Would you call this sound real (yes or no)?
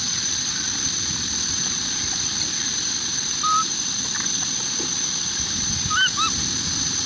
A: yes